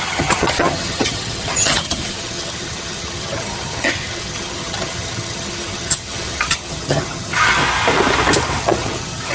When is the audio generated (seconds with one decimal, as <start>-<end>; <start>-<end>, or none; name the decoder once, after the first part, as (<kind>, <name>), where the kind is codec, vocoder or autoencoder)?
0.0-7.6 (vocoder, HiFi-GAN); 8.6-9.3